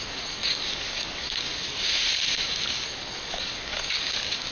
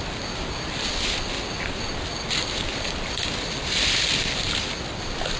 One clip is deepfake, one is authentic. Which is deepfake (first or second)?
first